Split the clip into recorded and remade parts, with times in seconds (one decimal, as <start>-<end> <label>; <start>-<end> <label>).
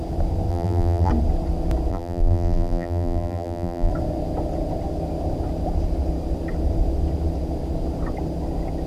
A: 0.0-0.5 recorded; 0.5-1.1 remade; 1.1-1.9 recorded; 1.9-3.9 remade; 3.9-8.9 recorded